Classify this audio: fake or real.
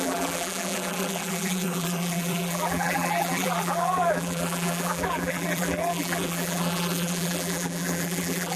fake